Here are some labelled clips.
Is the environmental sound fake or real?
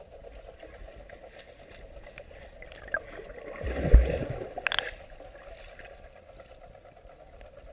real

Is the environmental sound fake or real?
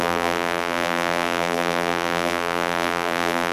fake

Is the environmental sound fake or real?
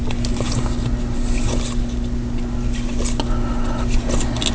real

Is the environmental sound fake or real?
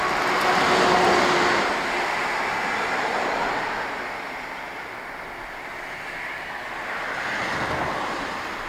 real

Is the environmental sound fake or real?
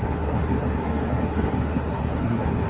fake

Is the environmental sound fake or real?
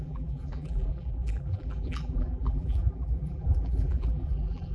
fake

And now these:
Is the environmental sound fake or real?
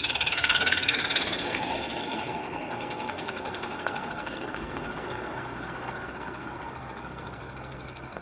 fake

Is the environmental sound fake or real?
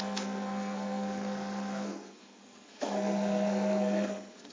fake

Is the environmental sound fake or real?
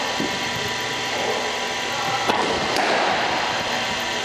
real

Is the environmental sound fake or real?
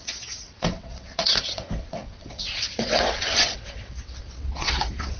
fake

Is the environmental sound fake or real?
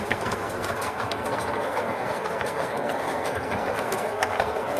fake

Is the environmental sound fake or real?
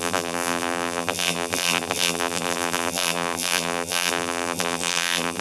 fake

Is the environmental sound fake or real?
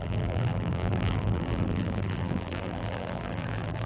fake